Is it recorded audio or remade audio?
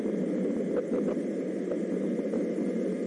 recorded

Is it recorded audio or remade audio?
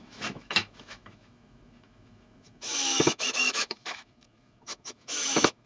remade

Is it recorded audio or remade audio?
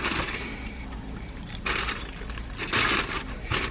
recorded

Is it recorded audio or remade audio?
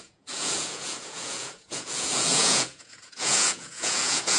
remade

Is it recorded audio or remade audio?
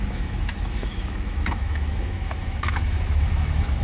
remade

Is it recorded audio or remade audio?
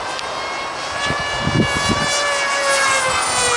recorded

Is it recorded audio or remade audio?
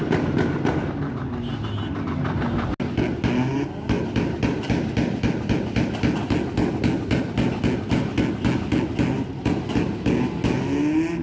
recorded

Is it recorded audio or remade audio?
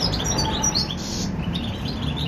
remade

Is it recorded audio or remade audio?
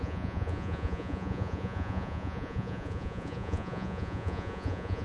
remade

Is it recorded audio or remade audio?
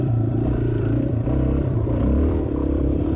remade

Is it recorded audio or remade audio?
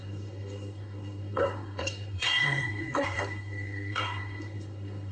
remade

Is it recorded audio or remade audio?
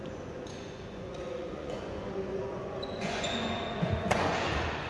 remade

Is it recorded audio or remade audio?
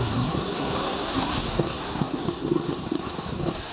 remade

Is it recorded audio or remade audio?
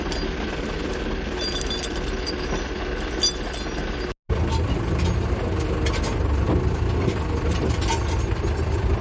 recorded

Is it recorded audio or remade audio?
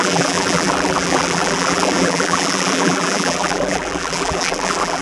remade